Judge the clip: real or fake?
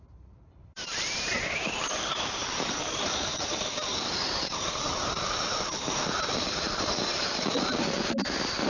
fake